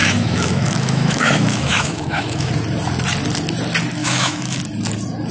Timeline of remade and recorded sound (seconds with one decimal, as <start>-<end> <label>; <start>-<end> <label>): 0.0-2.5 remade; 2.5-4.0 recorded; 4.0-4.6 remade; 4.6-5.3 recorded